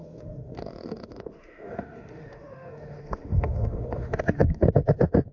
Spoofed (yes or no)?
yes